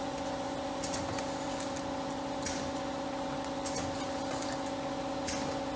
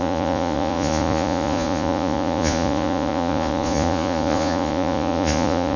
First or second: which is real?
first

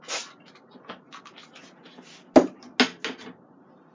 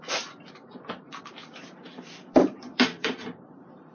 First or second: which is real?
first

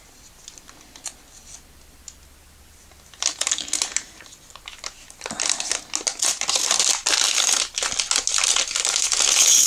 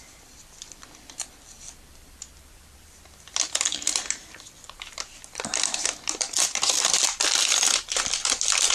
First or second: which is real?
first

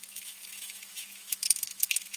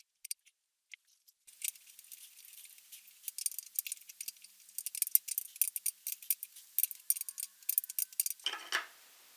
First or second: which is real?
second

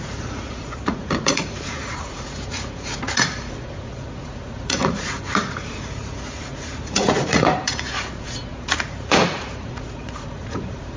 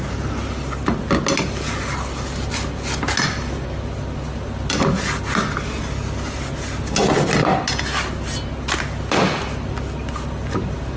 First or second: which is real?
second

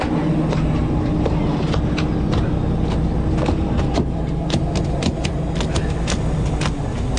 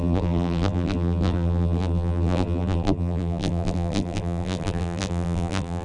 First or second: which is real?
first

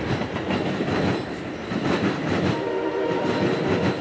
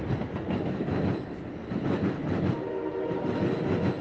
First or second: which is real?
second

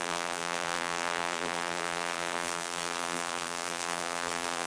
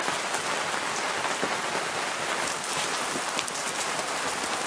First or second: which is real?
second